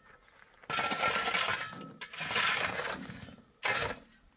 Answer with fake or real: real